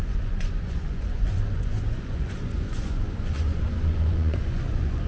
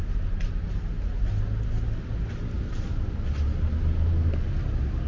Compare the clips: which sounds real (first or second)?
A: second